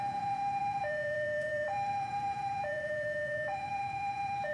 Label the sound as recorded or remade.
remade